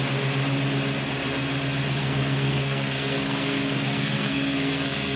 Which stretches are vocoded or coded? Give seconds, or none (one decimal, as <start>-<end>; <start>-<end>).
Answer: 2.0-5.2